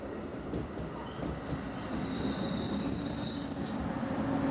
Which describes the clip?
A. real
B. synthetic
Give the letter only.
A